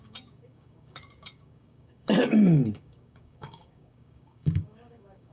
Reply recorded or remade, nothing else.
remade